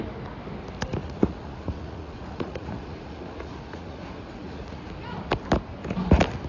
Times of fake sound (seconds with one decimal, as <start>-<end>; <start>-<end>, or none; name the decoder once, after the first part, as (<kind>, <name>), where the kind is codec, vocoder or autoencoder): 1.0-4.9 (vocoder, Vocos)